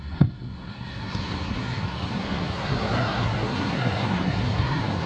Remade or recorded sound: remade